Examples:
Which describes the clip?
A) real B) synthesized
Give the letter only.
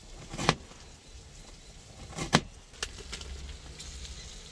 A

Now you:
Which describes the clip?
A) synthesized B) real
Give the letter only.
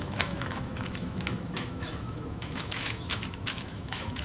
A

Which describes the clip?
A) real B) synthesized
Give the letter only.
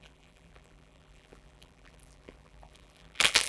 B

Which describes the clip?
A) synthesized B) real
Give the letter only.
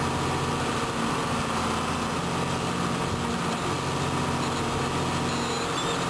B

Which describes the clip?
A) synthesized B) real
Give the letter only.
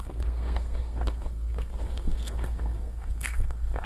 A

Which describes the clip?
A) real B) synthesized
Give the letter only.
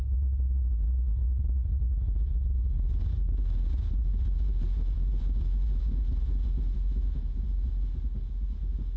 A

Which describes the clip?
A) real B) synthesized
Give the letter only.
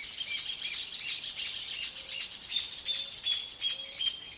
A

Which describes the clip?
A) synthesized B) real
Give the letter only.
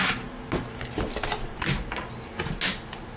B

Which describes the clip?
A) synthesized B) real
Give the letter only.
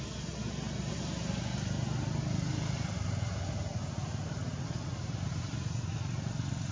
B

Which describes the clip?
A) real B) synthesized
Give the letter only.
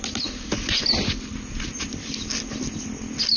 A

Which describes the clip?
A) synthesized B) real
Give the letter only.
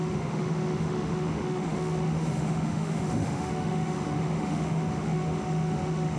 A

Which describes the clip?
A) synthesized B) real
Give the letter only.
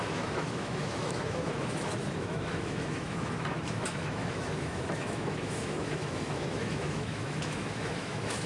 A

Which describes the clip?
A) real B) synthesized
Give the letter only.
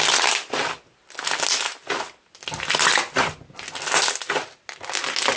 A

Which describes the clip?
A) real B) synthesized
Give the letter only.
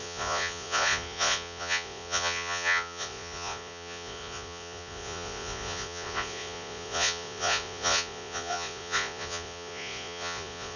B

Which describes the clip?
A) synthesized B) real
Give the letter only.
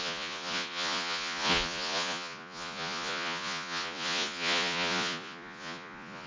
A